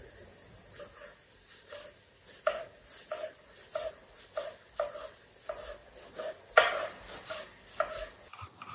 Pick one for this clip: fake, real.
real